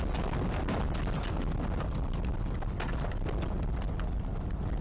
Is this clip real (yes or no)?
yes